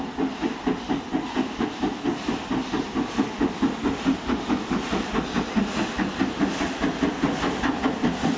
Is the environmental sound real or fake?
real